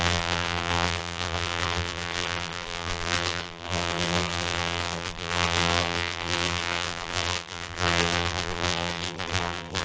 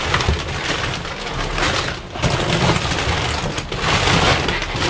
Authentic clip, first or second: second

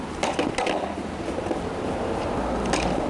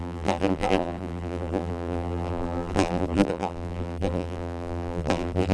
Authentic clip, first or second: first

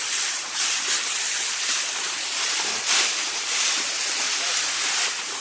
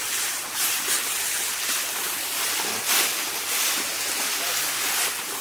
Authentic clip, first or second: second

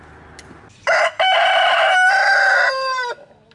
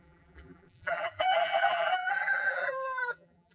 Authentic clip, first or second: first